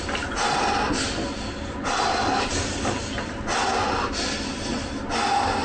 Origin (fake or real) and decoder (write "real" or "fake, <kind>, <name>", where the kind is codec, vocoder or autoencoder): real